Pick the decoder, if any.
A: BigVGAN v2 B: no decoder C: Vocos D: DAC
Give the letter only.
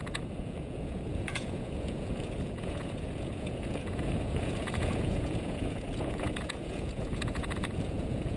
C